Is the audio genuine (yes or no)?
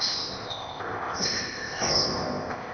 no